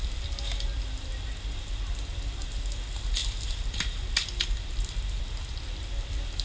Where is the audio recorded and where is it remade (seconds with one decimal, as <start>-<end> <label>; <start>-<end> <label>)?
0.0-6.4 recorded